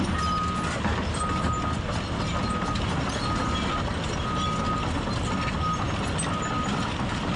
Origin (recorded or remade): recorded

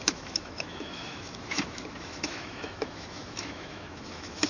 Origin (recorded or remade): remade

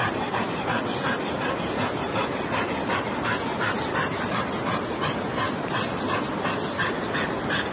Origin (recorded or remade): recorded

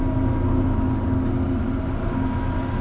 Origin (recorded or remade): recorded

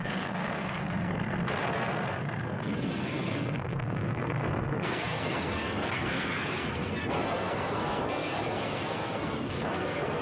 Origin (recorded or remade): remade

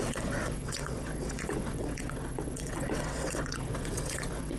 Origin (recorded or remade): remade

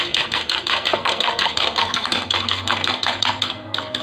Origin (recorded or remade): remade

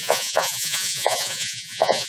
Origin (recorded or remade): remade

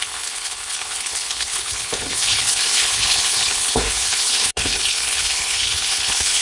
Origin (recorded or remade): remade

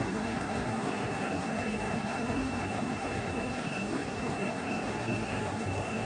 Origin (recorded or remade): remade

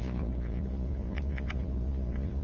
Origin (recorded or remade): remade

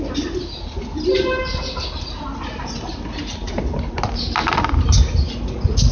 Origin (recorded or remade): recorded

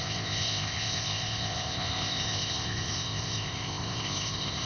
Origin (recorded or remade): remade